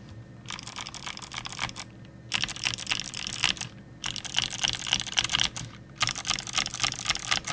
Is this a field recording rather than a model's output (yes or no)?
yes